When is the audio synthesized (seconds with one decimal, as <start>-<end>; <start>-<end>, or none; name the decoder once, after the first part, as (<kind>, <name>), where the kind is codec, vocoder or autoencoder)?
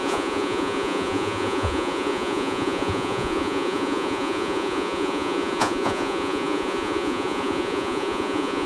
0.0-8.7 (vocoder, Vocos)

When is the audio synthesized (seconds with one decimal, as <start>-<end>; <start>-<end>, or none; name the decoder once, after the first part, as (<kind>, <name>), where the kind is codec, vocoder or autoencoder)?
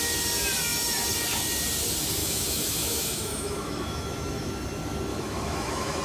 2.2-4.5 (autoencoder, DAC-VAE); 5.1-6.0